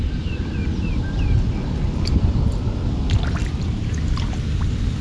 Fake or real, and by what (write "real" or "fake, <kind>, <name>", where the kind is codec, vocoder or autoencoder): real